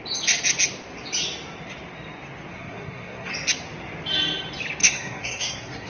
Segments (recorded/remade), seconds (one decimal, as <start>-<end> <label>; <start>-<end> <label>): 0.0-2.5 recorded; 2.5-3.3 remade; 3.3-4.8 recorded; 4.8-5.9 remade